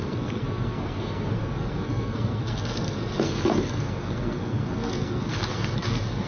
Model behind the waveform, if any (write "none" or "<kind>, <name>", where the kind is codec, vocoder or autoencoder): codec, SNAC